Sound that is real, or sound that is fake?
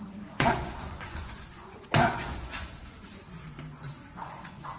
fake